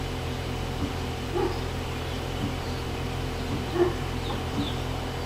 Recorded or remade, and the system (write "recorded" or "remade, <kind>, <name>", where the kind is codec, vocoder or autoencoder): remade, vocoder, BigVGAN v2